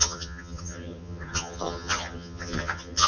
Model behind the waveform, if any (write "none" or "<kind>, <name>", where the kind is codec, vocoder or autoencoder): vocoder, HiFi-GAN